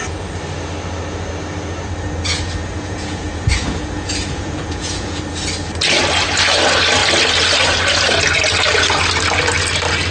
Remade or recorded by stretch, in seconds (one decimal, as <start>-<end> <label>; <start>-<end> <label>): 0.0-2.6 recorded; 2.6-5.2 remade; 5.2-10.1 recorded